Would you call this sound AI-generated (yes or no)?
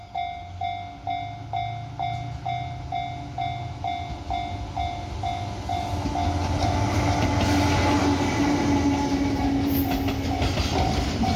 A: no